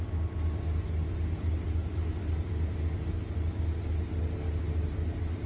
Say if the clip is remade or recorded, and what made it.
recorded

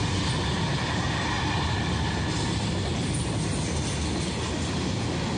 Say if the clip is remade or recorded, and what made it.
recorded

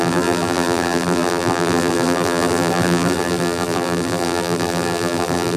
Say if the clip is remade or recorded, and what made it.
remade, vocoder, BigVGAN v2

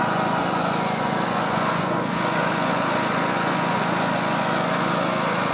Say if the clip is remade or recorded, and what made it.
remade, vocoder, Vocos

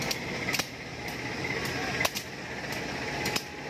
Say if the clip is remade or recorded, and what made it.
recorded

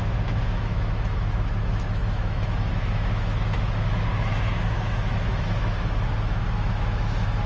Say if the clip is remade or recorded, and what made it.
remade, autoencoder, DAC-VAE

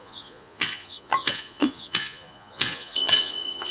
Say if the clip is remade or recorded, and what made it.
remade, vocoder, Vocos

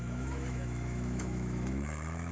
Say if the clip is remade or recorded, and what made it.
remade, autoencoder, DAC-VAE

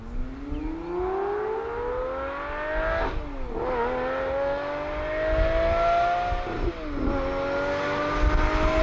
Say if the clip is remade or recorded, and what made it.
recorded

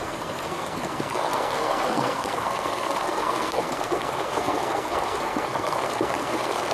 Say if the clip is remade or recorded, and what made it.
remade, codec, SNAC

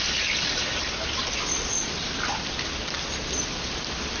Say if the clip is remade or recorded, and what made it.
recorded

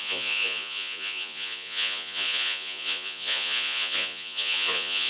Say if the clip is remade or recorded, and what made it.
remade, vocoder, Vocos